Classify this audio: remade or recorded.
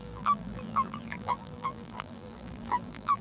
remade